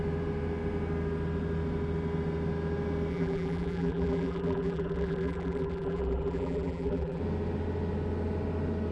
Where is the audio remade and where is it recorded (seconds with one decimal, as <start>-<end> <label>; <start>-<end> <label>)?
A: 0.0-3.1 recorded; 3.1-7.2 remade; 7.2-8.9 recorded